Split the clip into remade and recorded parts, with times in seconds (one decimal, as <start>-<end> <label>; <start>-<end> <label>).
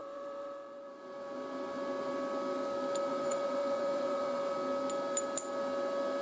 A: 0.0-0.9 remade; 0.9-3.1 recorded; 3.1-4.5 remade; 4.5-6.2 recorded